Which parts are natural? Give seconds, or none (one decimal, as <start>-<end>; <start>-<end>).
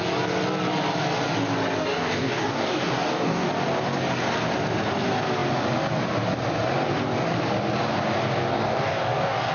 0.0-1.8; 3.5-8.5